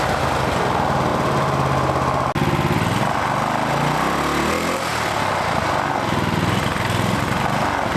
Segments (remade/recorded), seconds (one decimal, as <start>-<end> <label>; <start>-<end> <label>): 0.0-8.0 recorded

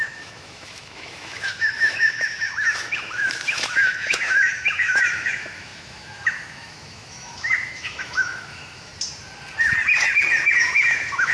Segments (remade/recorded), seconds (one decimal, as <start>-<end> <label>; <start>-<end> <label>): 0.0-8.9 remade; 8.9-10.6 recorded; 10.6-11.3 remade

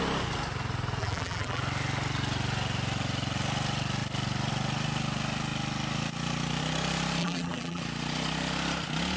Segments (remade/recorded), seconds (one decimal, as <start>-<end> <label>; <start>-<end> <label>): 0.0-1.0 recorded; 1.0-1.6 remade; 1.6-7.2 recorded; 7.2-7.8 remade; 7.8-9.2 recorded

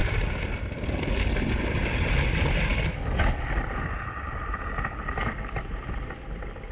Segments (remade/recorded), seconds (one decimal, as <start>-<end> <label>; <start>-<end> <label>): 0.0-6.7 recorded